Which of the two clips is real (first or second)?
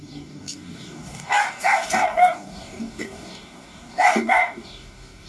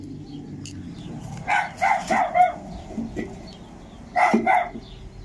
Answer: second